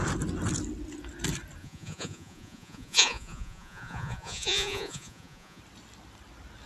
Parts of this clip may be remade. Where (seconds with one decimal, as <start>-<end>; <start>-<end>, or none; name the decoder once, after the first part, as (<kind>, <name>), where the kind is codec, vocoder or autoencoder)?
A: 1.6-5.6 (vocoder, Vocos)